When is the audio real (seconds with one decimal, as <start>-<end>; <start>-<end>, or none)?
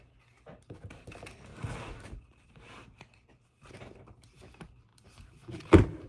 0.0-6.1